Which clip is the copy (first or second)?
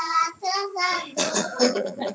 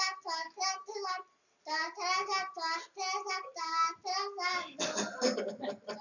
first